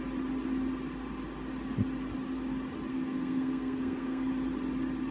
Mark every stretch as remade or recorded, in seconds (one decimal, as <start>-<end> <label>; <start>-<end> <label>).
0.0-2.9 recorded; 2.9-4.3 remade; 4.3-5.1 recorded